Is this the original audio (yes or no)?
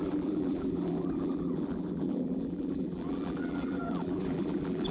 no